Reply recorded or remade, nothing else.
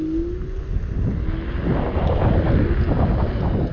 recorded